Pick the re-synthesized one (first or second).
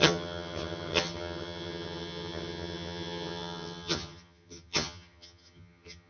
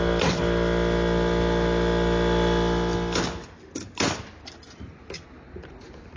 first